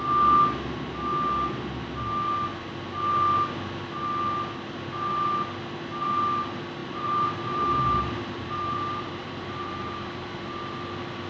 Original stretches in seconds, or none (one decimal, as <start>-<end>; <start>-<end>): 0.0-6.8; 10.4-11.3